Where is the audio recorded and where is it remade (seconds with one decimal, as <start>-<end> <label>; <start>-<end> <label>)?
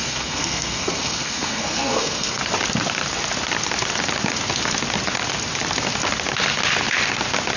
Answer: 0.0-2.4 remade; 2.4-7.6 recorded